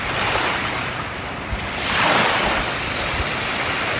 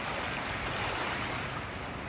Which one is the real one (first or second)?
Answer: second